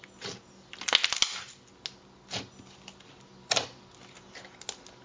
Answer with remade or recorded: recorded